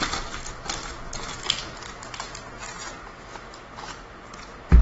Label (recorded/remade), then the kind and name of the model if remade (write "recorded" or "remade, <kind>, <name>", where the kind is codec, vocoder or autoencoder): recorded